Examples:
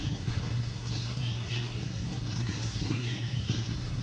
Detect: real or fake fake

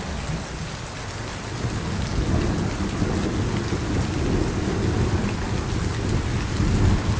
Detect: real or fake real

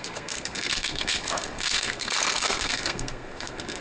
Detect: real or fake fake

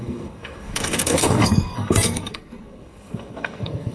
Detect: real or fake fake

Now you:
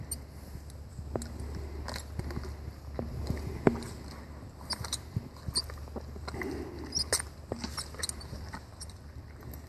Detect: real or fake real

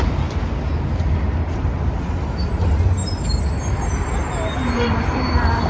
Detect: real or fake real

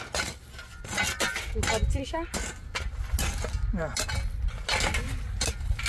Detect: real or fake real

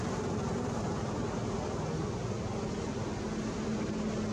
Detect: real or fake real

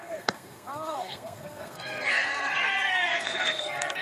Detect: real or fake fake